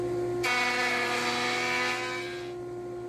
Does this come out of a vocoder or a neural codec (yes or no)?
no